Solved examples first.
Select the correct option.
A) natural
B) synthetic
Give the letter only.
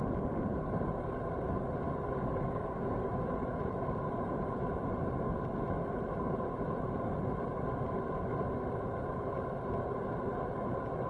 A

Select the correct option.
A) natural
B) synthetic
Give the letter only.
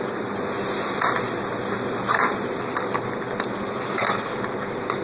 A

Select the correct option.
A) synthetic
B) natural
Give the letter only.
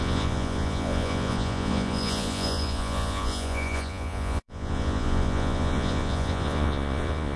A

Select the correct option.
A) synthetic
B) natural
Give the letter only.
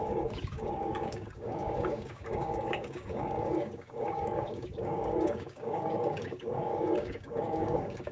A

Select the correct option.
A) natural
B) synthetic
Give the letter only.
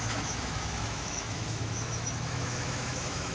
B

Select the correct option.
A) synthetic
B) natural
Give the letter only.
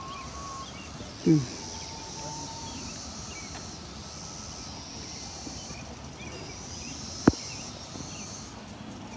B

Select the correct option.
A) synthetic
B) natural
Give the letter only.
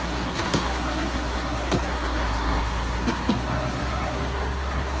A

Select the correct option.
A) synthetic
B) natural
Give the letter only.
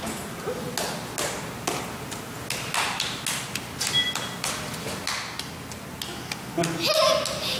B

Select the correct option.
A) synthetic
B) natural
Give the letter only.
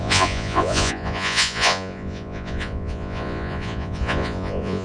A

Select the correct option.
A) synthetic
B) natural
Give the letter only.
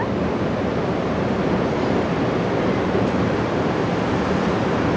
B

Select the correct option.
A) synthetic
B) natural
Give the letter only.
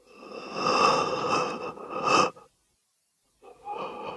B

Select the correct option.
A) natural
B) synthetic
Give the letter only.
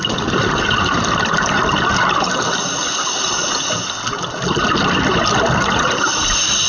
A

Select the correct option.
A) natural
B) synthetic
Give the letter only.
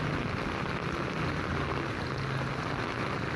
A